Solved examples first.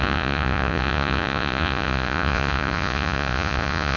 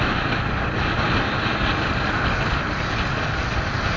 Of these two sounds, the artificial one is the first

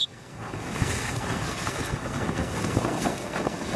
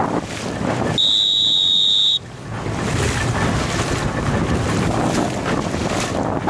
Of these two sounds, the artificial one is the first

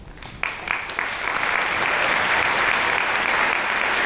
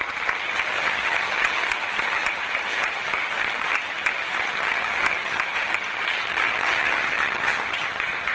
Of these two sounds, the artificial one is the second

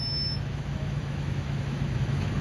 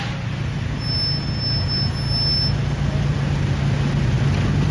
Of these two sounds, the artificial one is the first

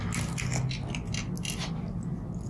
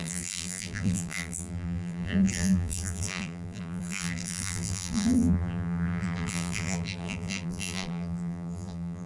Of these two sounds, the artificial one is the second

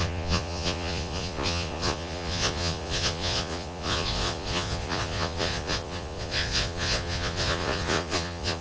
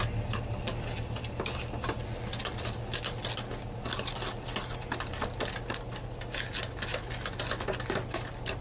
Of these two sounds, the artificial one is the first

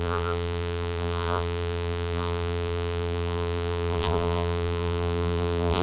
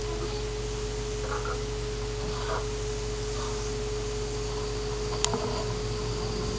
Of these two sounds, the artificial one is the first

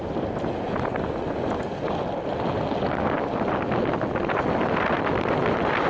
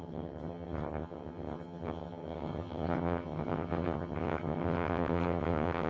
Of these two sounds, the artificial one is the second